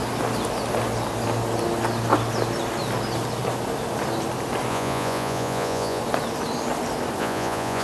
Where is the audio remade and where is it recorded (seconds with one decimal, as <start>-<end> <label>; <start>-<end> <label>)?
0.0-4.7 recorded; 4.7-6.0 remade; 6.0-7.2 recorded; 7.2-7.8 remade

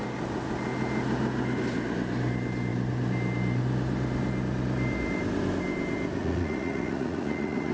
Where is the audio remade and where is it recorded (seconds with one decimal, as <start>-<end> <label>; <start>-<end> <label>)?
0.0-6.2 recorded; 6.2-7.7 remade